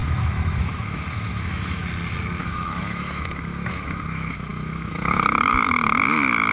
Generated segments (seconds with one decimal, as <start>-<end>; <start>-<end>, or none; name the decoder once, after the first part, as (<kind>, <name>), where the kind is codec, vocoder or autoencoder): 0.0-1.8 (autoencoder, DAC-VAE); 2.4-6.5